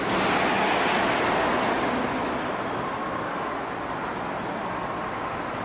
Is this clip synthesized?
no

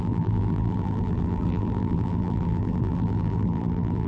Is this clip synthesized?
yes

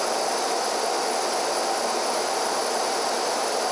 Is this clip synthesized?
no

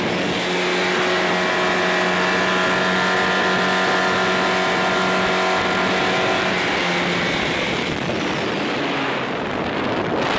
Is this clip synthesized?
no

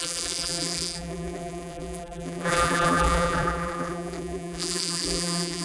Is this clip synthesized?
yes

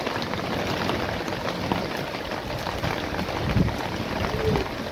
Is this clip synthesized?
no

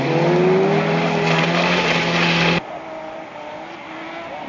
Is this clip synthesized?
yes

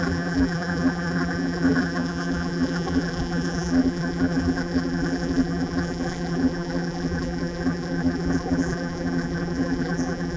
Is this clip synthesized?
yes